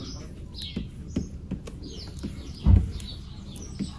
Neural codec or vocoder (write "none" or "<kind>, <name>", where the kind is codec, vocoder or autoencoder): none